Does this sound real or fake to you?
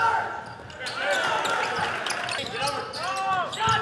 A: real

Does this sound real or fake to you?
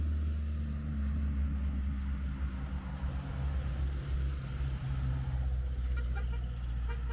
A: real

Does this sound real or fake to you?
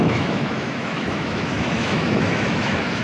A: fake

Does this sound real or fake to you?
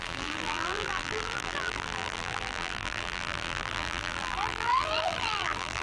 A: fake